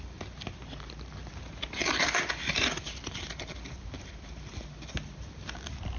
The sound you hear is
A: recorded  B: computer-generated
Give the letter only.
A